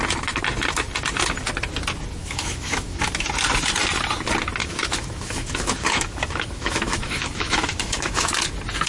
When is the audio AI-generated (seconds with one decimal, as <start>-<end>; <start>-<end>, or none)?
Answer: 2.2-3.0; 4.6-8.3